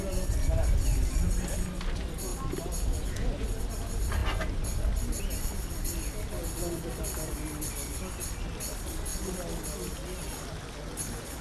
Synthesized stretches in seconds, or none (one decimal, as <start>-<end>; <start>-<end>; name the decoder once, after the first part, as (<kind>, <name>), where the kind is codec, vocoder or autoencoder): none